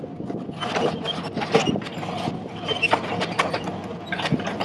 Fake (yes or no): no